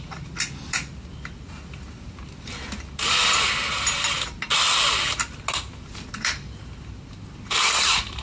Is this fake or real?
real